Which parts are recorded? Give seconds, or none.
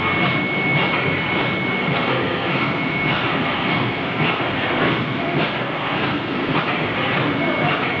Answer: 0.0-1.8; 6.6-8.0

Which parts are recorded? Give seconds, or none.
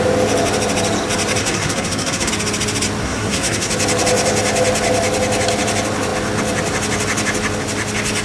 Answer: 0.0-1.4; 2.3-3.0; 3.7-8.2